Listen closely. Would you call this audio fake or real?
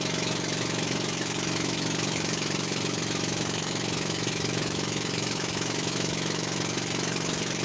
fake